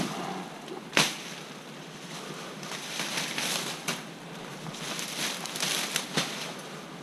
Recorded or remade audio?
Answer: recorded